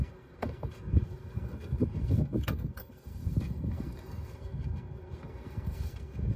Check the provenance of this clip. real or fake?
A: fake